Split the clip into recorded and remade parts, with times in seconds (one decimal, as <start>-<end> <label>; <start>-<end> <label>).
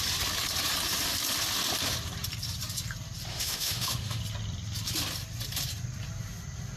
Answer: 0.0-3.3 recorded; 3.3-4.2 remade; 4.2-6.8 recorded